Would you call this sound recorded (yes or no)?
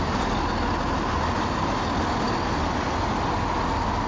yes